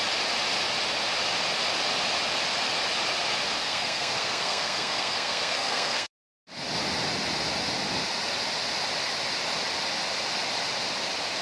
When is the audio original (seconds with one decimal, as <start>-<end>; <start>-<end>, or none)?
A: 0.0-3.6; 6.1-11.4